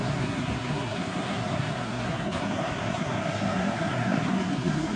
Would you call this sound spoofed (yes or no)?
yes